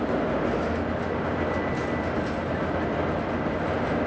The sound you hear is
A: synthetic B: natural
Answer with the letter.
B